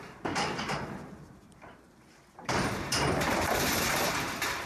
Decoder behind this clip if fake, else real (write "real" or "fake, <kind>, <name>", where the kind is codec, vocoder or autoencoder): fake, vocoder, BigVGAN v2